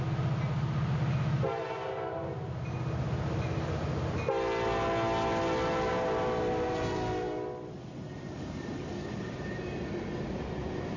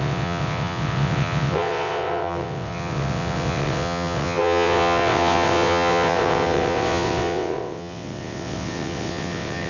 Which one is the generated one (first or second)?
second